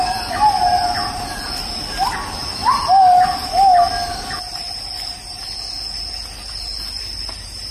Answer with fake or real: real